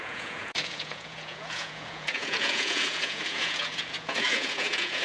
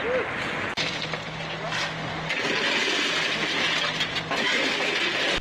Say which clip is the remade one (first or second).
first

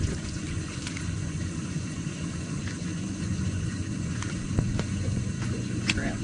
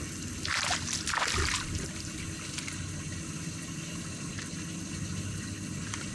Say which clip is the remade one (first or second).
first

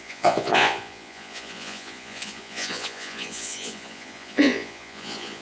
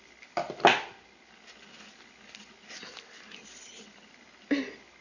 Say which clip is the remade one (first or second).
first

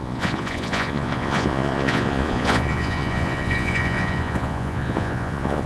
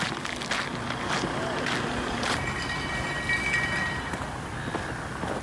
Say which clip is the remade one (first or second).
first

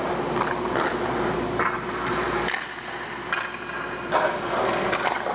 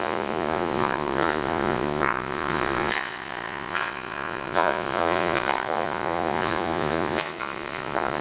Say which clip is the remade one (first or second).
second